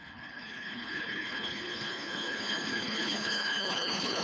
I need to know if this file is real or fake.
fake